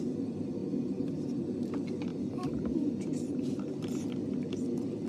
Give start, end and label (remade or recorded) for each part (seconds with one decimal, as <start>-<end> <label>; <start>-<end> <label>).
0.0-5.1 recorded